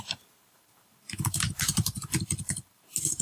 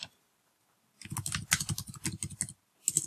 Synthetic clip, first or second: first